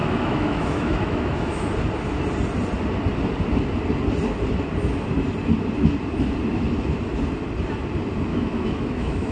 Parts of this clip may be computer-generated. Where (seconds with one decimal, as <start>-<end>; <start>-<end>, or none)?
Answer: 0.0-1.7; 8.3-9.3